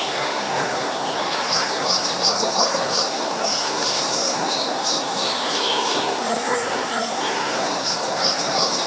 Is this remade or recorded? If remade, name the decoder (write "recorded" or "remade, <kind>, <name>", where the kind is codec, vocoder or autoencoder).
remade, codec, SNAC